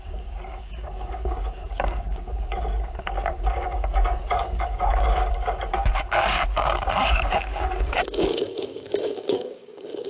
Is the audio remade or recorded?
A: remade